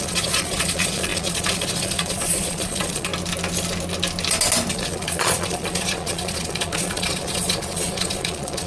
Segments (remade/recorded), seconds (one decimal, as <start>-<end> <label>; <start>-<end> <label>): 0.0-3.1 remade; 3.1-4.7 recorded; 4.7-8.7 remade